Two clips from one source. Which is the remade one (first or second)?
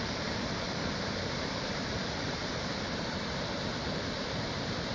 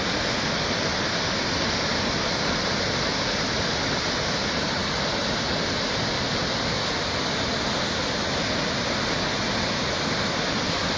first